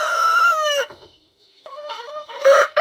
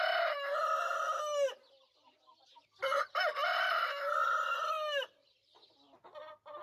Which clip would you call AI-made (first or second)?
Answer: first